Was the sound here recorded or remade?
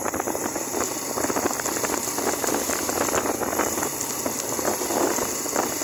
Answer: recorded